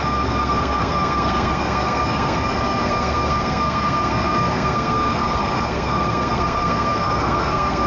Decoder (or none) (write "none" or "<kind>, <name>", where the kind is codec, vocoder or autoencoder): codec, SNAC